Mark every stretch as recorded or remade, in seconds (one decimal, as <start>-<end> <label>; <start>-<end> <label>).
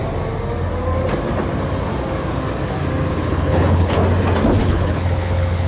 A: 0.0-3.1 recorded; 3.1-4.0 remade; 4.0-4.6 recorded; 4.6-5.7 remade